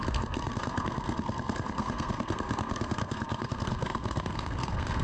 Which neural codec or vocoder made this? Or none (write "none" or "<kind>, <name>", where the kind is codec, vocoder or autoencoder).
codec, SNAC